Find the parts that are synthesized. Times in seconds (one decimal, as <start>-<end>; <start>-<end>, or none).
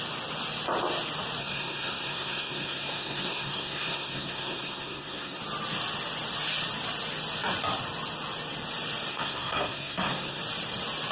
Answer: 1.4-5.4; 9.1-10.4